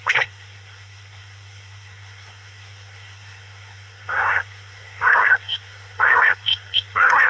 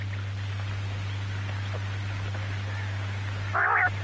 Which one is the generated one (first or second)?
first